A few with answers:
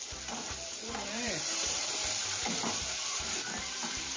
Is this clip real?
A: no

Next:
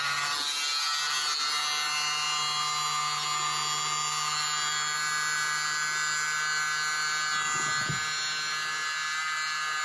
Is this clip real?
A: yes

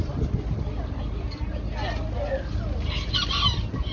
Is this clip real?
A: yes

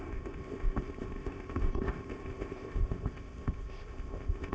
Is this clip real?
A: no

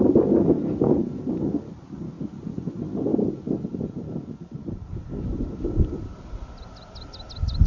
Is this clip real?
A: yes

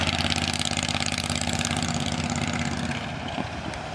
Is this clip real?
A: no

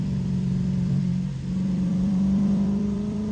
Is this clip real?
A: no